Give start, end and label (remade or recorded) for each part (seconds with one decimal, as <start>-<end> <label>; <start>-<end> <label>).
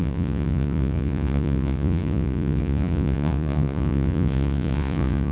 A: 0.0-5.3 remade